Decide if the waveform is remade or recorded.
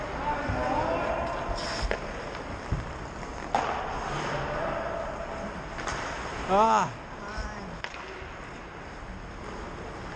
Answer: recorded